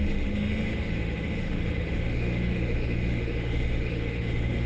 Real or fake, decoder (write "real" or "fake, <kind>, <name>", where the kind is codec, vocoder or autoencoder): fake, autoencoder, DAC-VAE